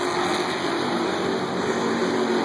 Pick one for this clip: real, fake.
real